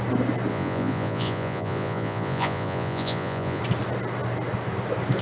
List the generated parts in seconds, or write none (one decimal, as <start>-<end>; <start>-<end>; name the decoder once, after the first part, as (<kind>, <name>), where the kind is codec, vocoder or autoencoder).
0.5-3.6 (vocoder, Vocos)